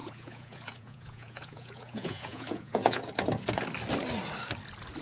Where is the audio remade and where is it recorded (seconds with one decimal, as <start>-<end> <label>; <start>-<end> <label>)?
0.0-3.0 remade; 3.0-5.0 recorded